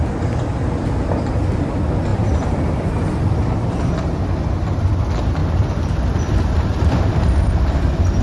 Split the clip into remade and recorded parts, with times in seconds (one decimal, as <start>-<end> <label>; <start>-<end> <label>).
0.0-2.1 recorded; 2.1-4.0 remade; 4.0-5.4 recorded; 5.4-7.6 remade; 7.6-8.2 recorded